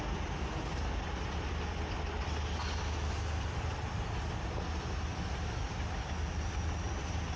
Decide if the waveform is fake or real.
real